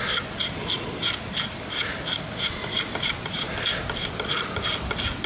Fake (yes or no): no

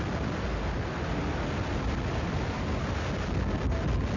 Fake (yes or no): no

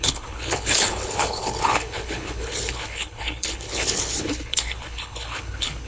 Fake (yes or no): yes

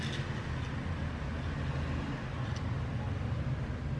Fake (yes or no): no